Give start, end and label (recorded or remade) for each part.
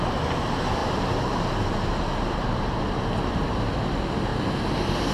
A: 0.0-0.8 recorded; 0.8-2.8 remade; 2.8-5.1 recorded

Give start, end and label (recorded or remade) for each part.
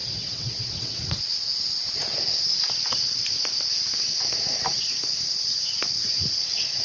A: 0.0-1.2 remade; 1.2-6.8 recorded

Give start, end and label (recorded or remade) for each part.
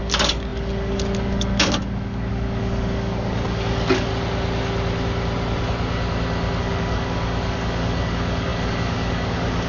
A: 0.0-4.1 remade; 4.1-6.6 recorded; 6.6-9.7 remade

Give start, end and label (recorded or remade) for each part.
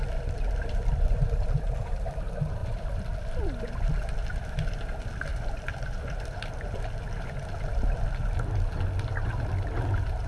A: 0.0-2.6 recorded; 2.6-3.6 remade; 3.6-5.3 recorded; 5.3-6.0 remade; 6.0-10.3 recorded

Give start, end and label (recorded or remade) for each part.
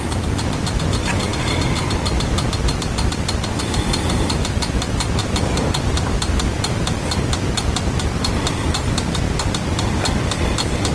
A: 0.0-10.9 recorded